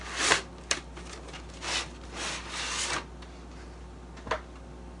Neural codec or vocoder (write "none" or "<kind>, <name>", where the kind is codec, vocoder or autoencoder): none